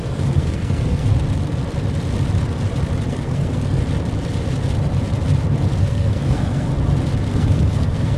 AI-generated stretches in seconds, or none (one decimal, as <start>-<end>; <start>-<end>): 0.0-1.1; 3.1-3.8; 5.8-6.7; 7.3-8.2